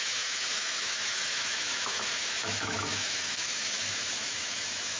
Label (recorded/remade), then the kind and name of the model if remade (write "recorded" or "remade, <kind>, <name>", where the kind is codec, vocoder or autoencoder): remade, autoencoder, DAC-VAE